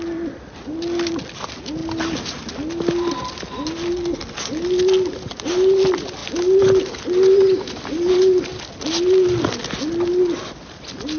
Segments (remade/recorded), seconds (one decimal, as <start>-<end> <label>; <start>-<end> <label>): 0.0-11.2 recorded